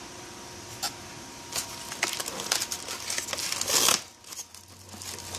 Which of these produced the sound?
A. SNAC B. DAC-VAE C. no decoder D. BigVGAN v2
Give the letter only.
C